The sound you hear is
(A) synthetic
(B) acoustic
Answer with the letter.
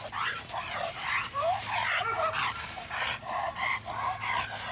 B